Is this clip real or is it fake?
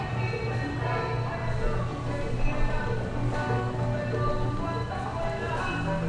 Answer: real